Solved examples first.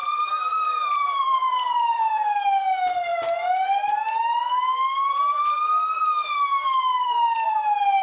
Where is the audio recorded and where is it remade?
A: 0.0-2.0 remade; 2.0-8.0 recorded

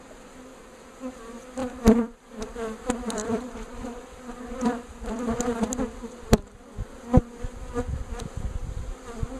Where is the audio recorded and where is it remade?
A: 0.0-0.5 recorded; 0.5-1.1 remade; 1.1-1.6 recorded; 1.6-5.6 remade; 5.6-9.4 recorded

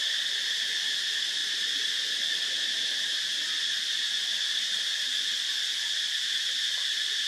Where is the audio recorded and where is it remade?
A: 0.0-7.3 recorded

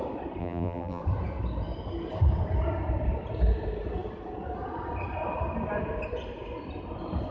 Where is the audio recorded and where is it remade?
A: 0.0-0.4 recorded; 0.4-1.0 remade; 1.0-7.3 recorded

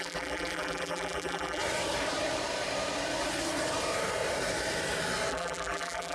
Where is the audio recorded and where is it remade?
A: 0.0-1.6 remade; 1.6-5.3 recorded; 5.3-6.1 remade

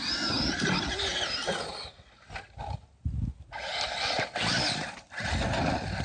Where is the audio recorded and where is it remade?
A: 0.0-6.0 recorded

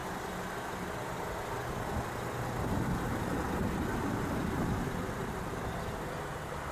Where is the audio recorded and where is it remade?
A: 0.0-4.0 recorded; 4.0-6.7 remade

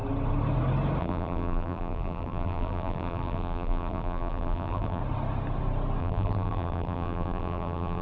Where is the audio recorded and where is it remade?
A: 0.0-1.0 recorded; 1.0-5.0 remade; 5.0-6.0 recorded; 6.0-8.0 remade